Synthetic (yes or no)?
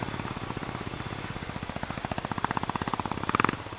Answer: no